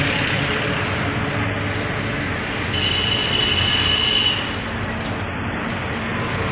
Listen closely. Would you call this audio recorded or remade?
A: recorded